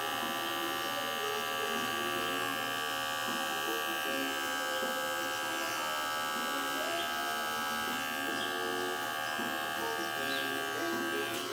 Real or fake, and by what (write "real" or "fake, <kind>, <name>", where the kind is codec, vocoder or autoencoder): real